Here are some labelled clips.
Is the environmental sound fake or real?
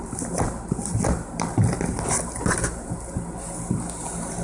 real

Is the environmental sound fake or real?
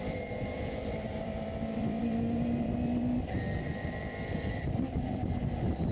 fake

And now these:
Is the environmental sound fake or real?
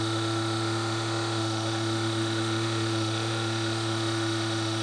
fake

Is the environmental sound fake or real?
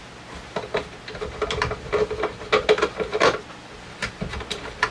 real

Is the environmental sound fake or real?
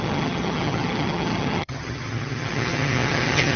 fake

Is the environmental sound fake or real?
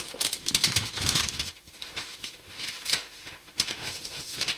fake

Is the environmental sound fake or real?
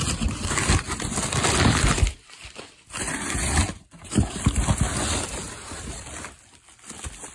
real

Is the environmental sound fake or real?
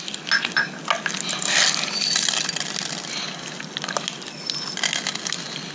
real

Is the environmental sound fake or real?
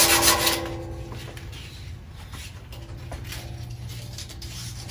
real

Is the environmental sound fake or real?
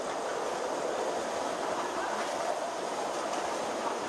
real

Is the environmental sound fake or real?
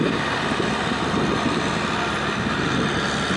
real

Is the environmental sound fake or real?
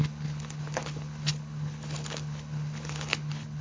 fake